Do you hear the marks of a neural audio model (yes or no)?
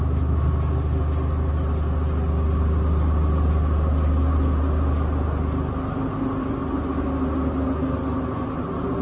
no